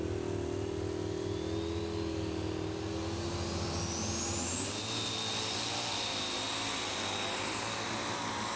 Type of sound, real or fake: real